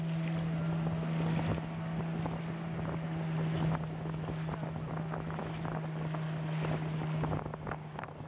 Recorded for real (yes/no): yes